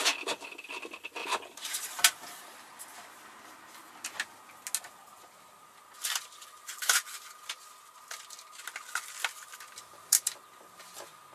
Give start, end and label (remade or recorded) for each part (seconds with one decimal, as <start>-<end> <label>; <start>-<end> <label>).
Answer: 0.0-1.2 recorded; 1.2-2.4 remade; 2.4-9.5 recorded; 9.5-10.9 remade; 10.9-11.3 recorded